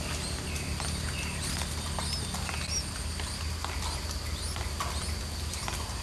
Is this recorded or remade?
recorded